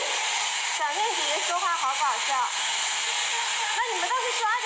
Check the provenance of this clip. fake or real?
real